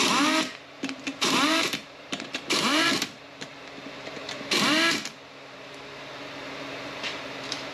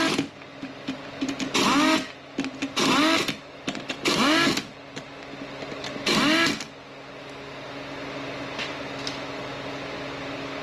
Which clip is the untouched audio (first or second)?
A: second